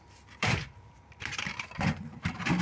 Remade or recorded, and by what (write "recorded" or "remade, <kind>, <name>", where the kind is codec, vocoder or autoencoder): remade, vocoder, BigVGAN v2